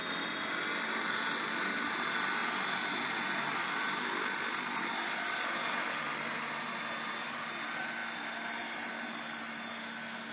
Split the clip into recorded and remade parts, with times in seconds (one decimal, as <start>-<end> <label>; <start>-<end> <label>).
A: 0.0-10.3 recorded

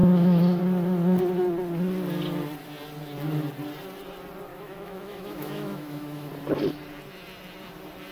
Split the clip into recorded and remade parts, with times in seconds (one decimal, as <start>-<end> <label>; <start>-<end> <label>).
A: 0.0-0.6 remade; 0.6-4.5 recorded; 4.5-6.3 remade; 6.3-8.1 recorded